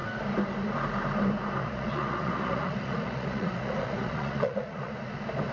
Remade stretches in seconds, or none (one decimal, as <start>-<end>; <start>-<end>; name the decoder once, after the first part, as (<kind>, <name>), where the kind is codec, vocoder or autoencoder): 1.6-4.9 (vocoder, Vocos)